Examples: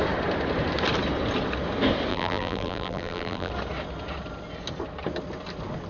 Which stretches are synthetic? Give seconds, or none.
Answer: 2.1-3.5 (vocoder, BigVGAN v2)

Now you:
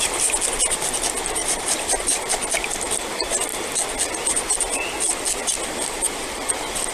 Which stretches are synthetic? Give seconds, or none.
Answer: 1.4-2.0 (vocoder, BigVGAN v2)

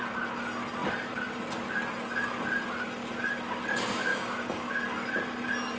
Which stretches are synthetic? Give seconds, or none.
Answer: 4.1-4.7 (codec, DAC)